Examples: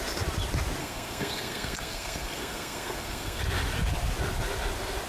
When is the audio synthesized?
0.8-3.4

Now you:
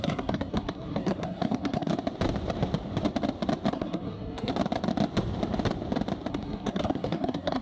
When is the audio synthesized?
0.0-1.9; 3.7-4.5; 6.3-7.6

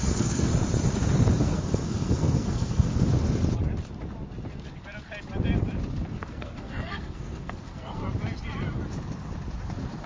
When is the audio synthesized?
0.0-0.5; 1.4-3.1; 6.2-8.0

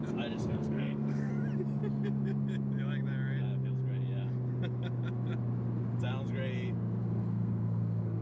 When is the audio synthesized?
0.5-1.3; 7.0-8.2

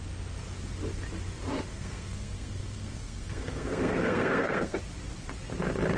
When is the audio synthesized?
1.7-4.8

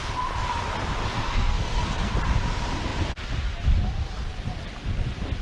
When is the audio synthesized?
1.0-2.1

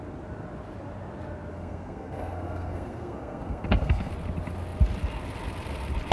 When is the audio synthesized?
1.5-4.1

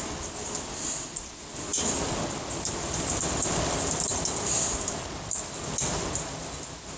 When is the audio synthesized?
none